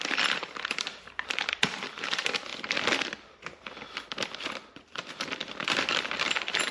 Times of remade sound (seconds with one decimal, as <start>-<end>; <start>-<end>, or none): 0.0-6.7